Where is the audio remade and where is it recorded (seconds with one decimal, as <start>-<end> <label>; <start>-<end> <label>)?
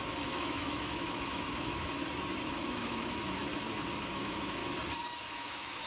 0.0-2.0 remade; 2.0-2.5 recorded; 2.5-3.5 remade; 3.5-4.1 recorded; 4.1-4.6 remade; 4.6-5.2 recorded; 5.2-5.9 remade